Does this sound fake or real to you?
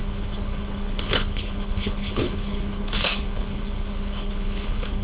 fake